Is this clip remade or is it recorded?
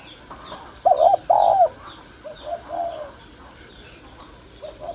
recorded